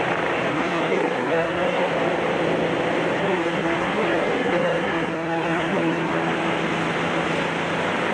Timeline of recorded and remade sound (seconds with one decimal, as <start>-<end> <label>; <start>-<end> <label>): 0.0-0.5 recorded; 0.5-1.9 remade; 1.9-3.2 recorded; 3.2-6.1 remade; 6.1-8.1 recorded